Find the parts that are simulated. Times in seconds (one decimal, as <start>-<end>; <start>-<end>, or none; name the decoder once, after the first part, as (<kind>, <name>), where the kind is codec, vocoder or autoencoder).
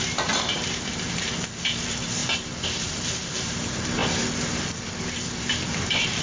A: 0.0-2.2 (vocoder, BigVGAN v2); 2.8-4.0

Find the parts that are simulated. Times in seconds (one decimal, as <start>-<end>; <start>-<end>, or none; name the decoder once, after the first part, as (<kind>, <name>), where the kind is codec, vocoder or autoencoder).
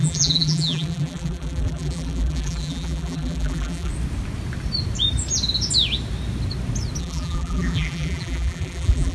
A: 0.0-3.9 (vocoder, BigVGAN v2); 7.0-9.1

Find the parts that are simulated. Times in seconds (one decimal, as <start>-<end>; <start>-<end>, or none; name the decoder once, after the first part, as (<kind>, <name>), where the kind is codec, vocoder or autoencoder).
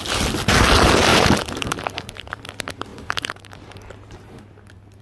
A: 1.1-2.4 (vocoder, BigVGAN v2); 2.9-4.3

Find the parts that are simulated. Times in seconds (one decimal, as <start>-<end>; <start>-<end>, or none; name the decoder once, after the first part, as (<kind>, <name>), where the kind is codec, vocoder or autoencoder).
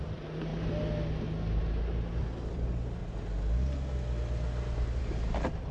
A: 0.0-0.5 (vocoder, BigVGAN v2); 2.4-3.0; 5.0-5.7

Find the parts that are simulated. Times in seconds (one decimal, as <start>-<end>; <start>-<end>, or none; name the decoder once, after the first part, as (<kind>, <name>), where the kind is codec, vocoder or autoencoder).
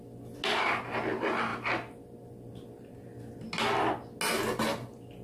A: none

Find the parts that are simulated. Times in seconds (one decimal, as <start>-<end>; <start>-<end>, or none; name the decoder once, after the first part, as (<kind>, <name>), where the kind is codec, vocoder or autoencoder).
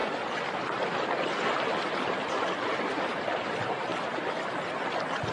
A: 2.4-3.9 (vocoder, BigVGAN v2); 4.5-5.3